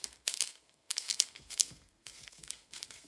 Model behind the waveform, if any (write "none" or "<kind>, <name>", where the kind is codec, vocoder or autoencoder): codec, SNAC